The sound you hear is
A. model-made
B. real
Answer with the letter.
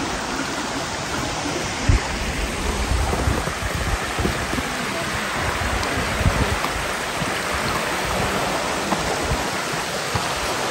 B